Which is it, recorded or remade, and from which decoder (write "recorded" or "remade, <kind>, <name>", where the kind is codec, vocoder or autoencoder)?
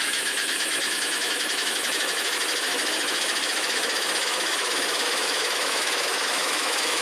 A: remade, autoencoder, DAC-VAE